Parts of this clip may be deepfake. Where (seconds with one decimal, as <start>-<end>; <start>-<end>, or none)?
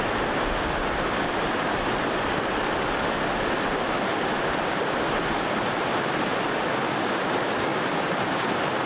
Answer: none